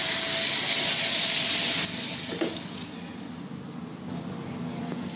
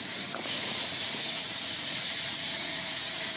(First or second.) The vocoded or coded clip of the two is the second